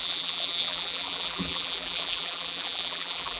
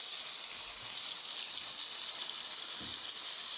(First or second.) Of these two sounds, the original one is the second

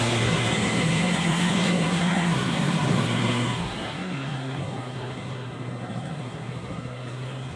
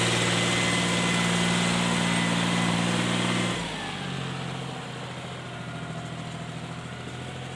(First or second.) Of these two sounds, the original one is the second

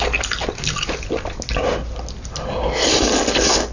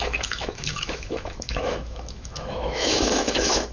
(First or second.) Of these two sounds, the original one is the first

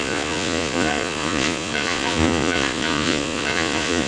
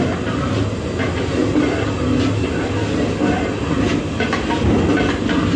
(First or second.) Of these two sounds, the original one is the second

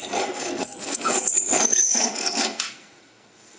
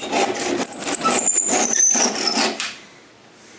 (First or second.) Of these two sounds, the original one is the second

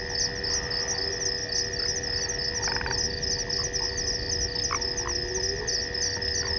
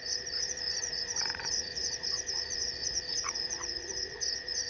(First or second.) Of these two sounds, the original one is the first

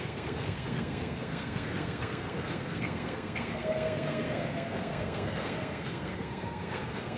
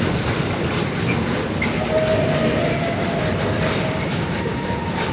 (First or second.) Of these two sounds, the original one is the second